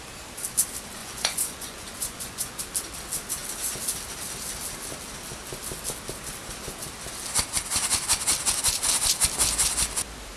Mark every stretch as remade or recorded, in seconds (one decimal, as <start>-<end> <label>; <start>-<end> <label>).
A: 0.0-1.0 recorded; 1.0-2.6 remade; 2.6-10.4 recorded